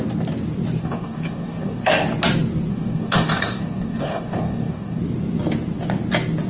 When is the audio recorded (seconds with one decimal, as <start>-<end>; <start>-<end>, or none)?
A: 0.0-0.8; 1.9-2.7; 5.0-6.5